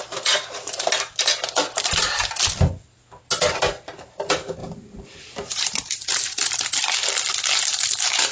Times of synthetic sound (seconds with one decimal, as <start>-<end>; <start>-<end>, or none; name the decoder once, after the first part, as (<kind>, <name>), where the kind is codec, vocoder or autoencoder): 1.3-2.5 (vocoder, BigVGAN v2); 4.6-6.8